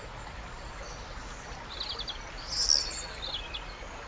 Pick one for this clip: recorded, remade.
recorded